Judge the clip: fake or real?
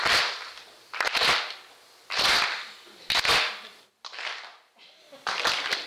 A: real